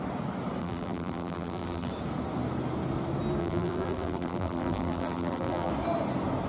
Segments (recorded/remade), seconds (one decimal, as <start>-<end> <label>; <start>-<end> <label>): 0.0-0.6 recorded; 0.6-1.9 remade; 1.9-3.4 recorded; 3.4-5.7 remade; 5.7-6.5 recorded